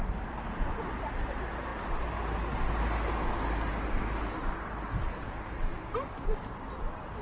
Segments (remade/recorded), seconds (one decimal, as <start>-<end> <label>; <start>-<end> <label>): 0.0-7.2 recorded